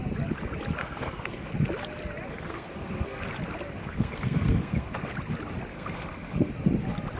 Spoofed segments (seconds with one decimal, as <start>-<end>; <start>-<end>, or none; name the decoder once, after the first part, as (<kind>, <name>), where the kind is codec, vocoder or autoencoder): 0.8-1.5 (codec, SNAC); 2.3-3.2; 3.8-5.1; 5.7-6.5